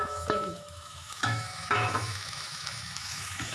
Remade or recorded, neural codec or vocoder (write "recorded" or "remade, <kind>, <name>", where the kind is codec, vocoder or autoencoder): remade, autoencoder, DAC-VAE